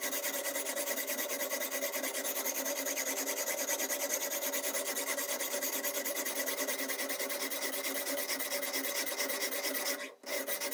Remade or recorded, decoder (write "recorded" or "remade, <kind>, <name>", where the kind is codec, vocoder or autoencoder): recorded